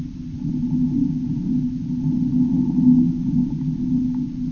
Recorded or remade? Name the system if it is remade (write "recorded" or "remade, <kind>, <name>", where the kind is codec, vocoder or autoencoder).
recorded